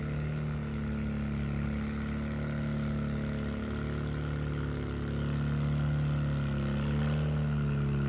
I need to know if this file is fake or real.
real